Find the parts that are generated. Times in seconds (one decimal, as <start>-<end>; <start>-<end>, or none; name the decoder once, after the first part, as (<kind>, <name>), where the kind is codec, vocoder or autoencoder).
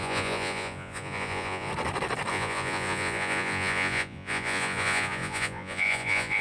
0.0-1.7 (vocoder, Vocos); 2.3-6.4